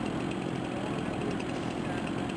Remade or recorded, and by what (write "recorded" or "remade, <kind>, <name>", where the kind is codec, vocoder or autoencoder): recorded